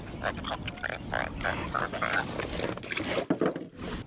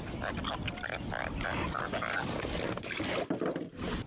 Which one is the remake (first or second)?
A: second